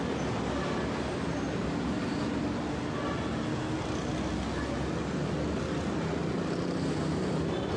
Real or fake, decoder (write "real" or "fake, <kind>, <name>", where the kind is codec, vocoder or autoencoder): real